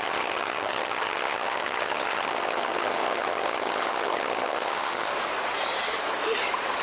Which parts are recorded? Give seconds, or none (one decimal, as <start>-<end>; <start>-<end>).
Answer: 5.1-6.8